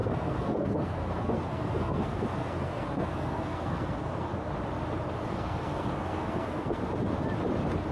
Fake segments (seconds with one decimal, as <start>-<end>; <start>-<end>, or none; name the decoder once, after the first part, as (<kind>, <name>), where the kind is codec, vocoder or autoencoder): 0.0-4.3 (codec, SNAC); 5.3-6.8